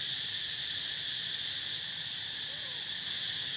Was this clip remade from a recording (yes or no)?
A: no